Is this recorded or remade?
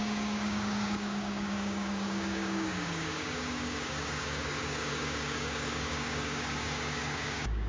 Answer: remade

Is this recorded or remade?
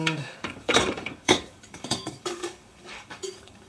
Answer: remade